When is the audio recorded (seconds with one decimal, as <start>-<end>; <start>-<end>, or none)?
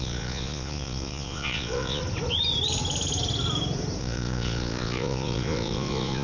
2.0-4.0